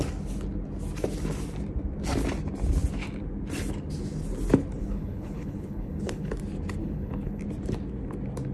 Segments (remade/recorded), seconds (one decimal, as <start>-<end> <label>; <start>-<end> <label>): 0.0-4.8 recorded; 4.8-6.3 remade; 6.3-6.8 recorded; 6.8-7.4 remade; 7.4-8.5 recorded